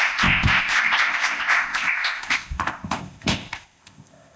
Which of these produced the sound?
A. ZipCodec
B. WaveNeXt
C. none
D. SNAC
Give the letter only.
A